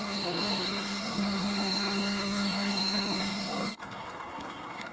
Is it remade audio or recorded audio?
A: remade